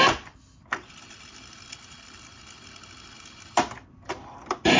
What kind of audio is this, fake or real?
real